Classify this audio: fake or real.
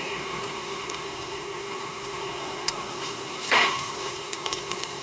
fake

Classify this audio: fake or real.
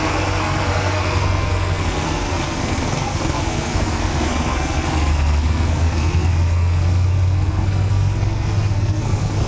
fake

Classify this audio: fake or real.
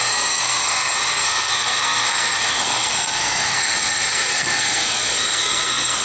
fake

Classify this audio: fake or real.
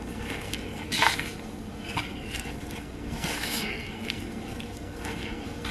fake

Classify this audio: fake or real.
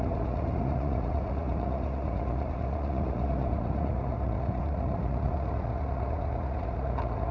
fake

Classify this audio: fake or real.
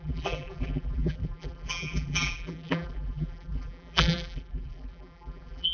fake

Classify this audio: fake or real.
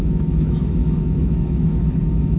fake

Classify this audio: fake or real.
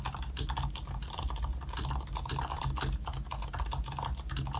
real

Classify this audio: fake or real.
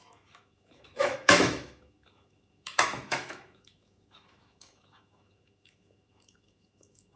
fake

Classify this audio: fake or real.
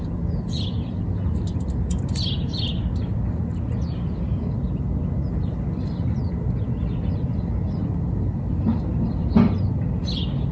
real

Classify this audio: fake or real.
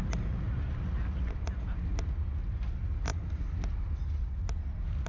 real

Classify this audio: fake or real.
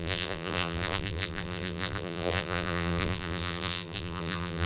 fake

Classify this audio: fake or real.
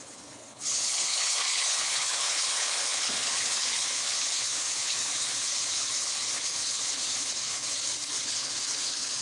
fake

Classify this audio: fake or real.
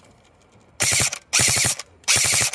real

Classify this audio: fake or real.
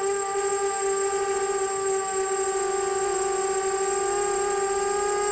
real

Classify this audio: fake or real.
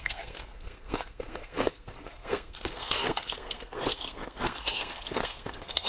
fake